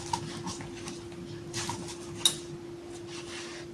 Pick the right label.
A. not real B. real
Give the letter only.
B